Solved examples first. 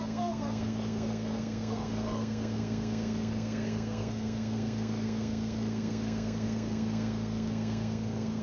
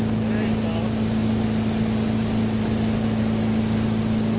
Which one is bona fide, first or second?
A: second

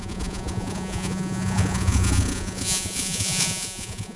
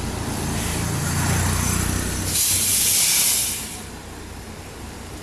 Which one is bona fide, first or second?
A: second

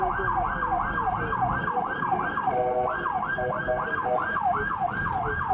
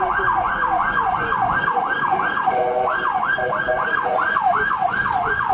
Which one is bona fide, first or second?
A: first